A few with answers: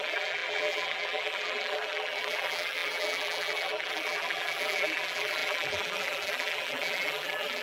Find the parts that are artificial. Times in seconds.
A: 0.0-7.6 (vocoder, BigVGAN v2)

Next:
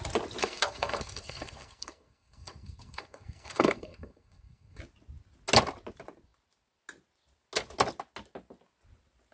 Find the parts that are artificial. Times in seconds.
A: 0.4-4.8 (codec, SNAC)

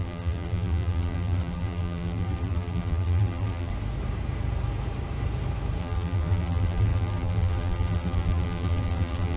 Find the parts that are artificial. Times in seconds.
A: 0.0-3.7 (vocoder, BigVGAN v2); 5.8-9.4

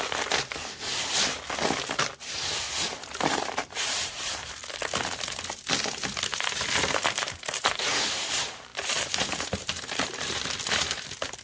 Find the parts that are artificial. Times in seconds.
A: 0.0-0.9 (vocoder, BigVGAN v2); 3.0-4.6; 6.4-11.4

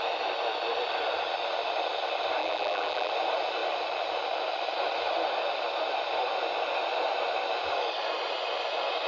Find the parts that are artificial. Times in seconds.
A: 2.4-3.1 (vocoder, BigVGAN v2)

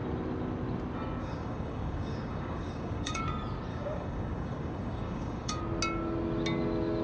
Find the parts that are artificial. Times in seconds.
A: 1.2-3.2 (codec, DAC); 3.7-5.6